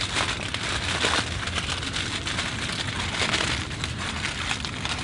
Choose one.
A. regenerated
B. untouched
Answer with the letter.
B